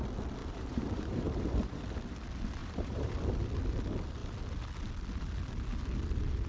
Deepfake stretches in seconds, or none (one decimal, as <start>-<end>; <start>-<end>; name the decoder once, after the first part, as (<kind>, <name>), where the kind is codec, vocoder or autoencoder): 0.4-1.8 (vocoder, BigVGAN v2); 2.6-3.1